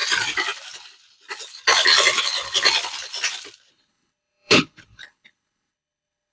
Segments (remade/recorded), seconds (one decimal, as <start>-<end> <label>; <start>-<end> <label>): 0.0-3.7 recorded; 3.7-6.3 remade